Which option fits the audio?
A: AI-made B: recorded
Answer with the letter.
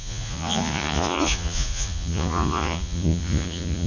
A